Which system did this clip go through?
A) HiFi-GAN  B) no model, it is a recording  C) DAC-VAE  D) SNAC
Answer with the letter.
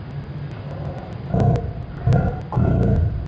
B